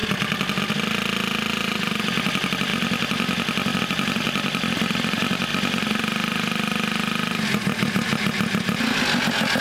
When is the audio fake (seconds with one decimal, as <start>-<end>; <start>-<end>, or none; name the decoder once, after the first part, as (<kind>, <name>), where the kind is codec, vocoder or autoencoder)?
none